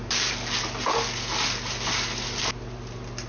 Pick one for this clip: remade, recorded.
recorded